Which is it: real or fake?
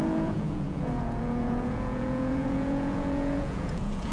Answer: fake